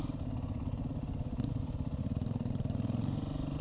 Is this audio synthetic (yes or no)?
no